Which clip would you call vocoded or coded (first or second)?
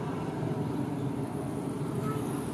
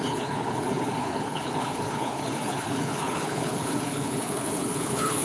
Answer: second